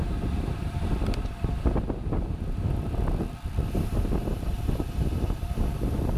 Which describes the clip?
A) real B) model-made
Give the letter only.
B